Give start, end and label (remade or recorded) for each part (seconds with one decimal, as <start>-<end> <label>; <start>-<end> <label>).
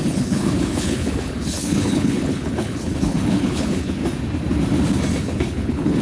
0.0-4.0 remade; 4.0-5.2 recorded; 5.2-6.0 remade